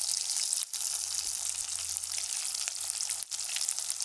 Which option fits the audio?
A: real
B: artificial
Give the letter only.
A